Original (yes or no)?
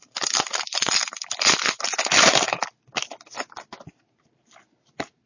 yes